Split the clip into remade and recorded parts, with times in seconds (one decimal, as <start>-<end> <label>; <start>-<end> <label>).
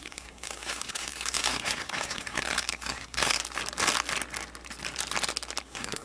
0.0-3.4 remade; 3.4-5.6 recorded; 5.6-6.0 remade